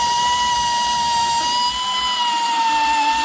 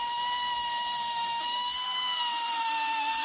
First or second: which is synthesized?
second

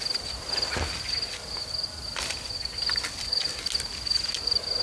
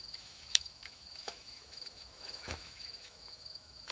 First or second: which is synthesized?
second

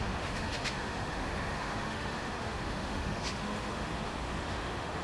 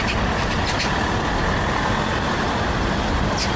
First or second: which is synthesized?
first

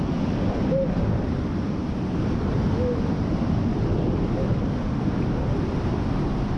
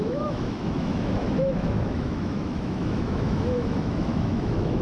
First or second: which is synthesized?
second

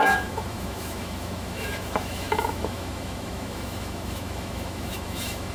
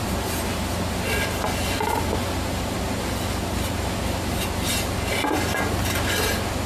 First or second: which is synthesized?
first